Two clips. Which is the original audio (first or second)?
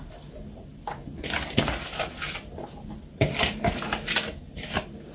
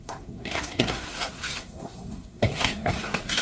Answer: first